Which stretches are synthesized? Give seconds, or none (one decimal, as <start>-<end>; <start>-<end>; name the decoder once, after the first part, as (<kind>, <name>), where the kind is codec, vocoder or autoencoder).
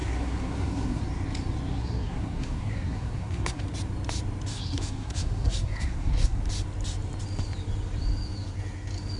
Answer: 0.0-1.0 (codec, SNAC); 1.7-3.6; 4.5-6.4